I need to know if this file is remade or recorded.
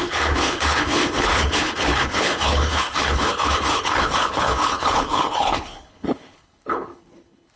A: remade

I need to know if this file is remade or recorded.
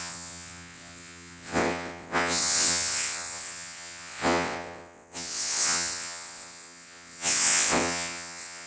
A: remade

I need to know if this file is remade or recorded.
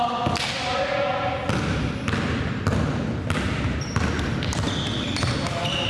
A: recorded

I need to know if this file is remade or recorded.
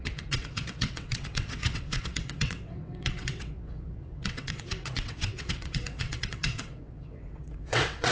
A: remade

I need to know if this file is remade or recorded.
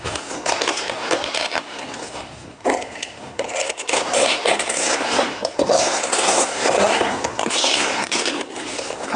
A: remade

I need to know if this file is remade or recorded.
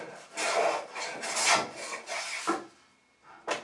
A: recorded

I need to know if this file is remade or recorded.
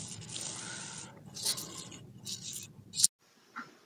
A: recorded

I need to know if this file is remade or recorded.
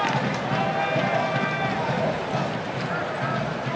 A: recorded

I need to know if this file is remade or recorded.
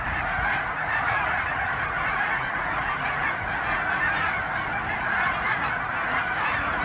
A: remade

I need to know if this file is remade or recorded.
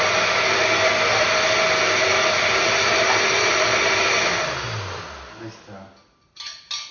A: recorded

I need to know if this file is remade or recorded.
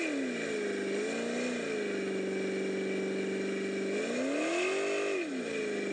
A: recorded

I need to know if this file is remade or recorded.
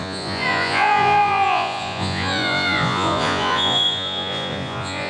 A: remade